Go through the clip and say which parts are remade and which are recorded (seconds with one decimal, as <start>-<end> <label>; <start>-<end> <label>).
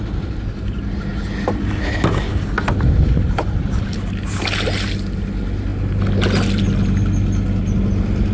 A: 0.0-8.3 recorded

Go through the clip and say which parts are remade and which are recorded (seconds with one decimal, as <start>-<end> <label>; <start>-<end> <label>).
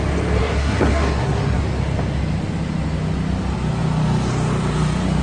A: 0.0-0.4 recorded; 0.4-1.6 remade; 1.6-5.2 recorded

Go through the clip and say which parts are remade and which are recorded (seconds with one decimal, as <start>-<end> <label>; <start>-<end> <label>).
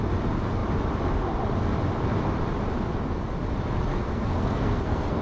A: 0.0-3.9 recorded; 3.9-5.2 remade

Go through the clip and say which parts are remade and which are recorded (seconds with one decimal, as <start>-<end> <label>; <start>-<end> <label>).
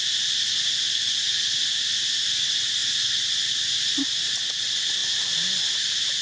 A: 0.0-6.2 recorded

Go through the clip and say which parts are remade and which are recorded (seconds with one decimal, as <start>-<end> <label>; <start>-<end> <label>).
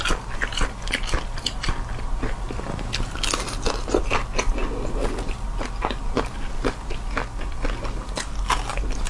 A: 0.0-9.1 recorded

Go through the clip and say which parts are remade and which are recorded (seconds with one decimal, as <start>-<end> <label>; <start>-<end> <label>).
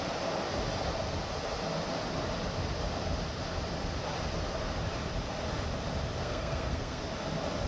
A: 0.0-6.2 recorded; 6.2-7.0 remade; 7.0-7.7 recorded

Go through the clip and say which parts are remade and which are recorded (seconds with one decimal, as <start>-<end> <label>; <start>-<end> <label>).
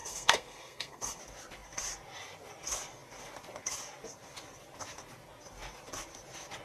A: 0.0-1.2 remade; 1.2-6.6 recorded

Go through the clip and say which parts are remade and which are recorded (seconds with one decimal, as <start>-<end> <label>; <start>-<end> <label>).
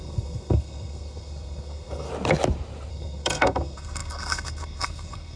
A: 0.0-2.1 remade; 2.1-2.9 recorded; 2.9-5.4 remade